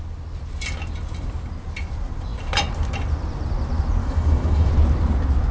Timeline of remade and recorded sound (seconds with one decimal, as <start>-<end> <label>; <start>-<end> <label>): 0.0-4.0 recorded; 4.0-4.7 remade; 4.7-5.5 recorded